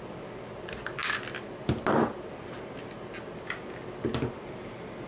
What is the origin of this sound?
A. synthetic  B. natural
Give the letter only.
B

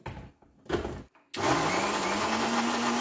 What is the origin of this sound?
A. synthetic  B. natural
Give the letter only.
B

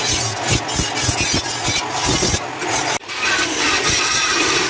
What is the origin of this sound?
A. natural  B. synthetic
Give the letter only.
A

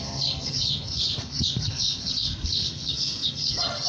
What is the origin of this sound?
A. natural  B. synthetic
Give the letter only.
B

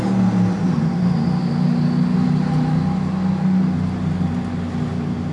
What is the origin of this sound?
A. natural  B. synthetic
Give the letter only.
A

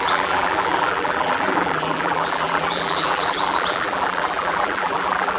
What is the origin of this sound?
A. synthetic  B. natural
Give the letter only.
A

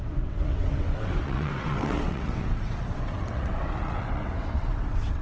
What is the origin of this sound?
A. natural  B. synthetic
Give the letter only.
B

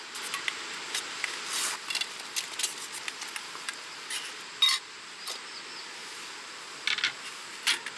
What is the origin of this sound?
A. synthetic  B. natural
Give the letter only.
B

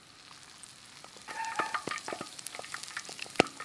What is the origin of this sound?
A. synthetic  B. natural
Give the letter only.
B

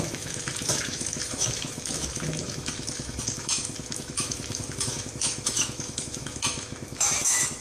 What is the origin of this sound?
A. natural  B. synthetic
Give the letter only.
B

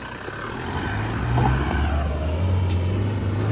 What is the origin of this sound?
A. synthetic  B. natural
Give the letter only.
B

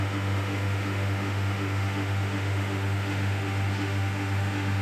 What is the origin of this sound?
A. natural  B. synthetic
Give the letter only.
B